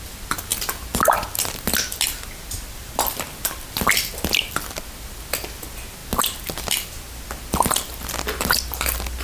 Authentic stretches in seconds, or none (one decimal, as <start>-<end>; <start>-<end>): 0.0-9.2